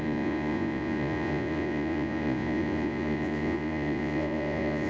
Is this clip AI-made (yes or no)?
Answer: yes